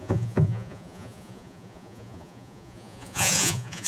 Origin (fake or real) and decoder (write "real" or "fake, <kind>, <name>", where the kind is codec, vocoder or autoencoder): fake, vocoder, Vocos